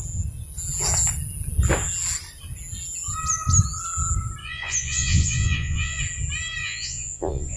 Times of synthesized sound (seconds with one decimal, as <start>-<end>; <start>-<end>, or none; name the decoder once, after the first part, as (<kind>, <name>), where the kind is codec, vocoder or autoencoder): 4.4-6.0 (vocoder, Vocos); 6.6-7.6